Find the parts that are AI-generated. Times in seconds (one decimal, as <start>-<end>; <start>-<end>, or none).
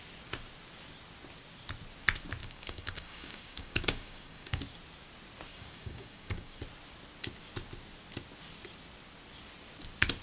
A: 2.4-4.6; 5.5-6.6